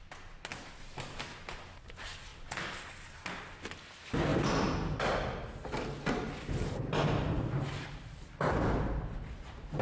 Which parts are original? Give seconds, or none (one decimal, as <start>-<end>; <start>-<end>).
0.0-9.8